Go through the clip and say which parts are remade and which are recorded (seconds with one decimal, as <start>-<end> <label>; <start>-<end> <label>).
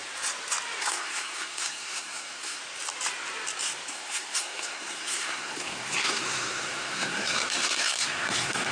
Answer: 0.0-0.8 recorded; 0.8-2.6 remade; 2.6-3.9 recorded; 3.9-8.7 remade